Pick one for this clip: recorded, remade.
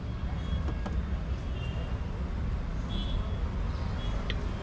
recorded